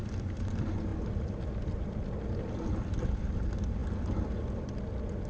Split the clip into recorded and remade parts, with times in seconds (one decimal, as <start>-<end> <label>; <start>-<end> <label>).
0.0-5.3 recorded